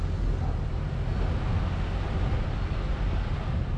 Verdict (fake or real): real